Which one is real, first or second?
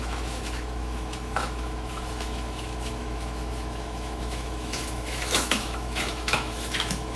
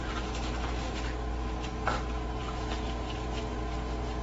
second